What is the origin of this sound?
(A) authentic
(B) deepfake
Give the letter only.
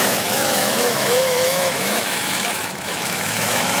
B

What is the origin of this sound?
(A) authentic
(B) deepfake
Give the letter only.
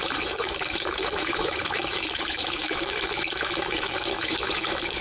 B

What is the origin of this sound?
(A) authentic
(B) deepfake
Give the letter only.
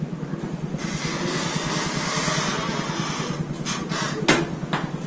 A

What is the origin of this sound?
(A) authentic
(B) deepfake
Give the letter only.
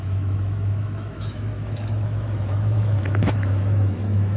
B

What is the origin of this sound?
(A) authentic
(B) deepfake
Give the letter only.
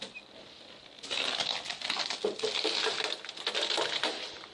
A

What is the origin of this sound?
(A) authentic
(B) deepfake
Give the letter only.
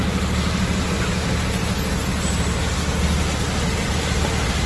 A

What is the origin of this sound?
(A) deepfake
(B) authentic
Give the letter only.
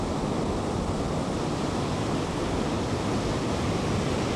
B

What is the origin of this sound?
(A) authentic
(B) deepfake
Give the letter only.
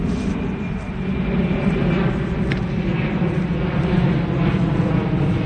A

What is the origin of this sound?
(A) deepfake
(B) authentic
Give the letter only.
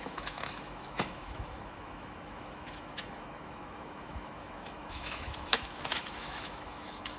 A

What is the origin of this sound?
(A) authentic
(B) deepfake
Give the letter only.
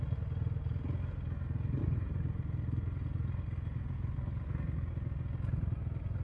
A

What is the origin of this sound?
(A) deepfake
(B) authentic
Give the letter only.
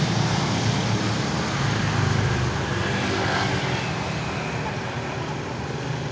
B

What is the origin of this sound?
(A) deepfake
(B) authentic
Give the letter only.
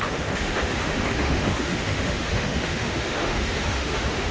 A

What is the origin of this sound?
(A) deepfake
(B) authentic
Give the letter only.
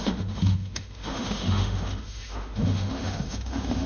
A